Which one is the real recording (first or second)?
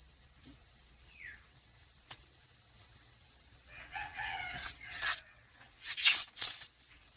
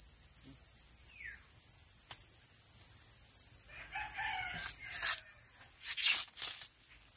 second